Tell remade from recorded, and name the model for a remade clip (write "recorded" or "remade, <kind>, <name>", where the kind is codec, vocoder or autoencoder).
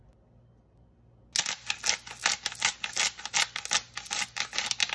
recorded